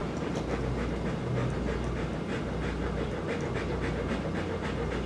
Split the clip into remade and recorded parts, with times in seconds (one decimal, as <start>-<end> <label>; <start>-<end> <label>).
0.0-5.1 recorded